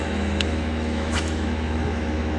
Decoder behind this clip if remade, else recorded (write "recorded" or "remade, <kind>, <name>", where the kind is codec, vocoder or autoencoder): remade, autoencoder, DAC-VAE